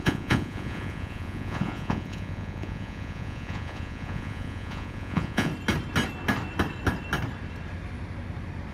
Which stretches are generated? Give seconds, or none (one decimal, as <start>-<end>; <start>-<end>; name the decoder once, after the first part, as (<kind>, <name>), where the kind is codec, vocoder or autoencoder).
0.0-5.5 (vocoder, Vocos)